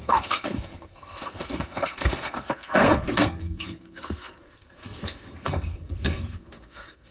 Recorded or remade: remade